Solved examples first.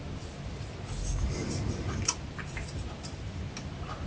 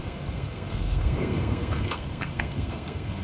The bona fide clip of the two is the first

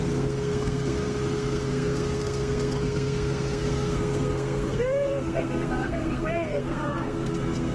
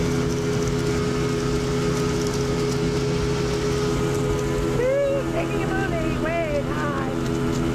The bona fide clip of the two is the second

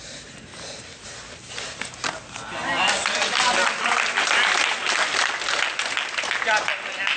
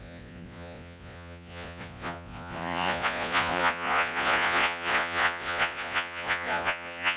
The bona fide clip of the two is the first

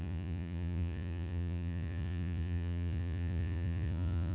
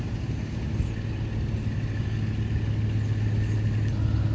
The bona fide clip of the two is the second